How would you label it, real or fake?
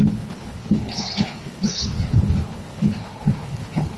fake